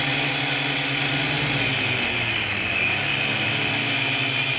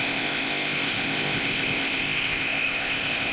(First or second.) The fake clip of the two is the second